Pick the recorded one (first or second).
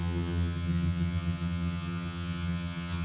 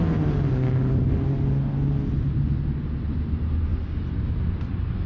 second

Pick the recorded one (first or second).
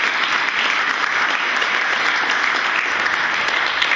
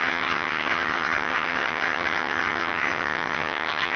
first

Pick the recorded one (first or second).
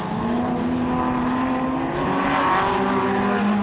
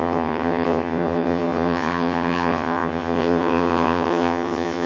first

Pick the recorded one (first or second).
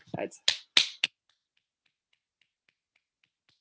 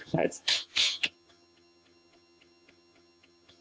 first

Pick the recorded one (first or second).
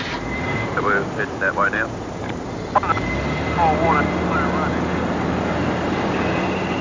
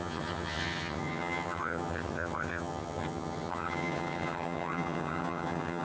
first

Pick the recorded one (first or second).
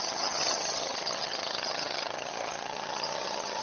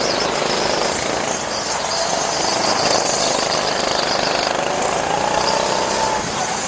second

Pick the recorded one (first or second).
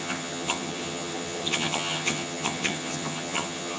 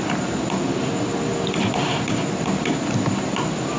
second